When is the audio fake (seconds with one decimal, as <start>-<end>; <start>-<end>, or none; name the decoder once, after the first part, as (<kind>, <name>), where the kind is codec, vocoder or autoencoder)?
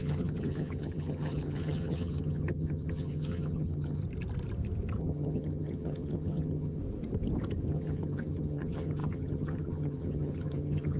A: 0.0-4.0 (vocoder, HiFi-GAN); 5.0-6.8; 7.7-11.0